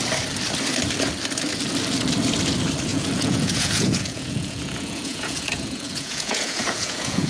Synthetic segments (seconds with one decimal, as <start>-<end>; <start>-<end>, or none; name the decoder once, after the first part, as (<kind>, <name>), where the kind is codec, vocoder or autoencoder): 2.9-7.3 (vocoder, Vocos)